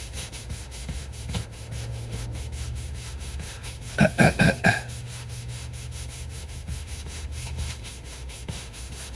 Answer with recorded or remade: remade